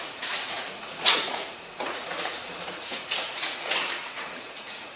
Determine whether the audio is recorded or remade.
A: remade